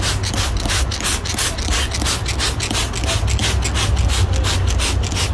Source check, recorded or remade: recorded